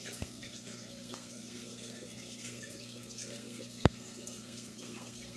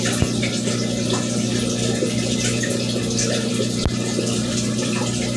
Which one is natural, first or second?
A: second